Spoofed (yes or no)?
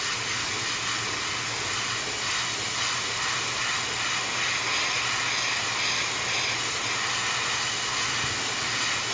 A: no